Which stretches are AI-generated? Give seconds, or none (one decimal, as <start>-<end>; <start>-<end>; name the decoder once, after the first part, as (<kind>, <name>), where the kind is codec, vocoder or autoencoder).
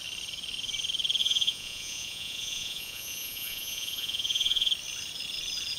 1.2-4.7 (vocoder, Vocos)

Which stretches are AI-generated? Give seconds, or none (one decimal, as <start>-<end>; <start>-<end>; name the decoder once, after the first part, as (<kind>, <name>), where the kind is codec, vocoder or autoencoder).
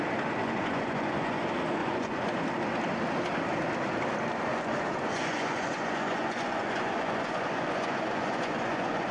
0.4-1.4 (vocoder, Vocos); 1.8-2.4; 4.5-9.1